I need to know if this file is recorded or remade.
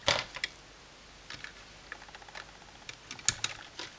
recorded